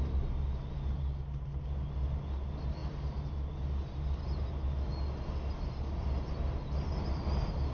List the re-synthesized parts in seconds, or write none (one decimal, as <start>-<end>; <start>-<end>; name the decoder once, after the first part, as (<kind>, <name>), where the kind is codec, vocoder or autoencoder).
none